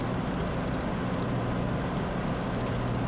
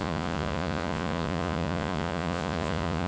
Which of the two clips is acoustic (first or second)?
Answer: first